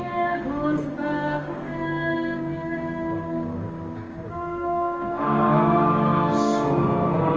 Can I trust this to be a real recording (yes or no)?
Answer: no